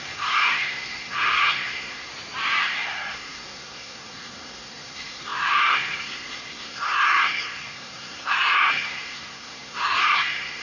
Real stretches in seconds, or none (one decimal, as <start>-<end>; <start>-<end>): 2.1-2.6